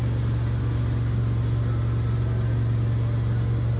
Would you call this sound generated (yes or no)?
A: no